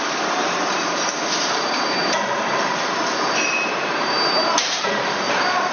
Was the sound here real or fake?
fake